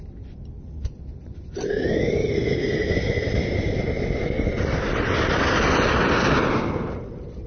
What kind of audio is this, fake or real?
real